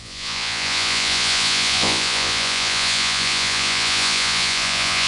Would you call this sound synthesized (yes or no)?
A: yes